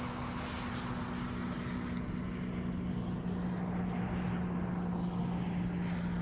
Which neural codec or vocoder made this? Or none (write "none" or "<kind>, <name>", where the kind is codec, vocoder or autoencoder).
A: none